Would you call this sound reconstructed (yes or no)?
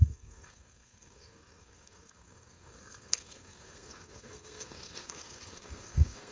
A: yes